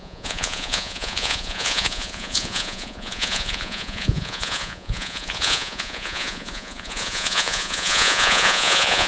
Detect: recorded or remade remade